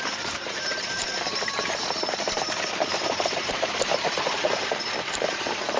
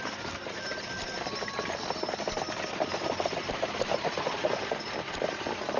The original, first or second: second